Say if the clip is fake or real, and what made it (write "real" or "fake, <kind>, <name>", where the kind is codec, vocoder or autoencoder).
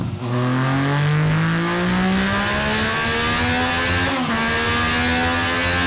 real